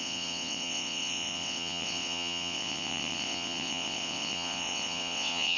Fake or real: fake